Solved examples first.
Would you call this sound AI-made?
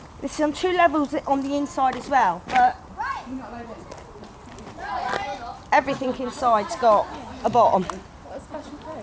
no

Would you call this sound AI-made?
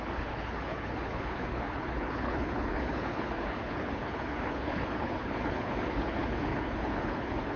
yes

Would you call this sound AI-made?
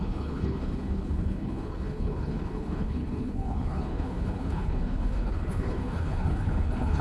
yes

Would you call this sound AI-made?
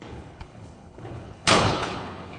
yes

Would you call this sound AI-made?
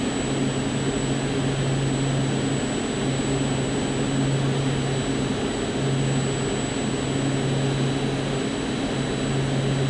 no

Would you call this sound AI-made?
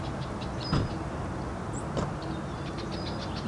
no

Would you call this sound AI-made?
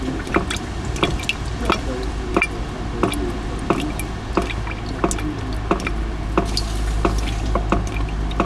no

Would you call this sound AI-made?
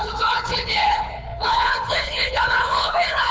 yes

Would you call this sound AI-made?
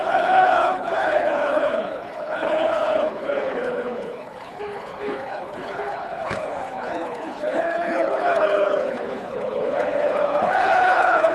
yes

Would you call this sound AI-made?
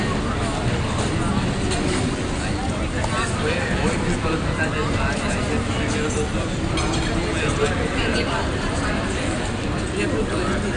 no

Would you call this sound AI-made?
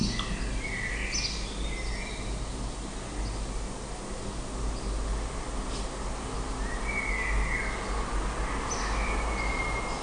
no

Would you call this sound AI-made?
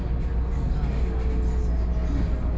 no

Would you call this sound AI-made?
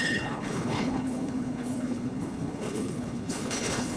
yes